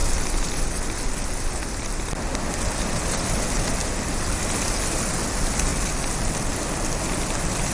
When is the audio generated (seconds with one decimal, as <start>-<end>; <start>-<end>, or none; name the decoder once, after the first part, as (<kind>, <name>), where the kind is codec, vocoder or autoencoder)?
2.5-3.8 (vocoder, BigVGAN v2); 4.4-5.7; 6.5-7.7